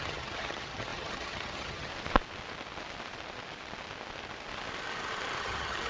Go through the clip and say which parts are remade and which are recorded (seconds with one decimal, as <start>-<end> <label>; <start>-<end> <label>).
0.0-1.9 remade; 1.9-5.4 recorded; 5.4-5.9 remade